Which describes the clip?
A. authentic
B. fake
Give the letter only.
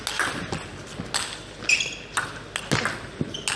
A